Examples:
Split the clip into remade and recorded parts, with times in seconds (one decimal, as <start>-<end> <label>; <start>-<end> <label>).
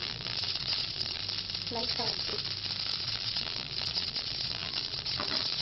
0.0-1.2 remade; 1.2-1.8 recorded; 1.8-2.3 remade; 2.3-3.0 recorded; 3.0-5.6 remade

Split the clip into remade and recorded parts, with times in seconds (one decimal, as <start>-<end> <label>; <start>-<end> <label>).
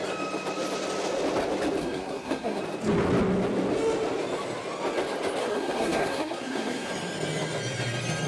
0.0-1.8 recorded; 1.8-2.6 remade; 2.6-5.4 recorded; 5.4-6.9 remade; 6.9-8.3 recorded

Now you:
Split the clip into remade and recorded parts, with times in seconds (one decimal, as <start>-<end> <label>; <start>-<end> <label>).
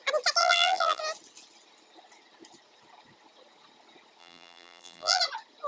0.0-0.4 recorded; 0.4-1.0 remade; 1.0-4.2 recorded; 4.2-5.2 remade; 5.2-5.7 recorded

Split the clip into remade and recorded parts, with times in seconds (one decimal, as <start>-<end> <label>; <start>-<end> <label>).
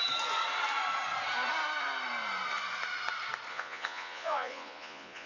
0.0-3.5 recorded; 3.5-5.3 remade